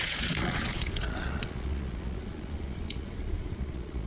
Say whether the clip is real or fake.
fake